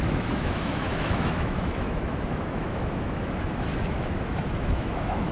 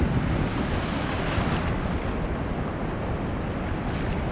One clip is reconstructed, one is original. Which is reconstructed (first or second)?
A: first